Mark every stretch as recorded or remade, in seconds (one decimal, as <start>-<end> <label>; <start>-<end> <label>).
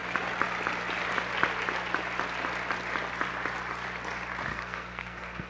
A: 0.0-4.5 recorded; 4.5-5.5 remade